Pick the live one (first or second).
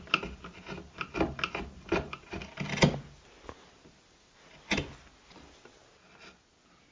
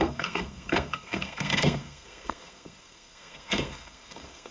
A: first